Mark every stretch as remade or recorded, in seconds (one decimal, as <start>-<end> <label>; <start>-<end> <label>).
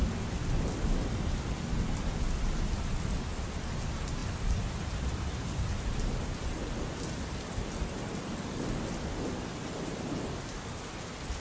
0.0-11.4 recorded